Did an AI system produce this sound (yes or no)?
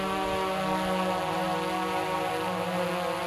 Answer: no